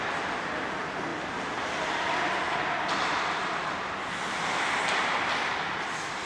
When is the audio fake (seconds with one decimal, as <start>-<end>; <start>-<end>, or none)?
none